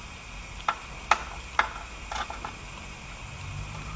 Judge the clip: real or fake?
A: real